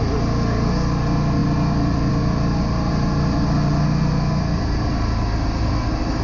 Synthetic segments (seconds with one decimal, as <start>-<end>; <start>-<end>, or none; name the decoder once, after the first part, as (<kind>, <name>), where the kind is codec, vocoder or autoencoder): none